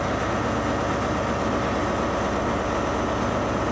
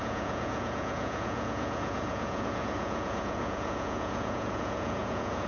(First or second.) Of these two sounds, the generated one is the second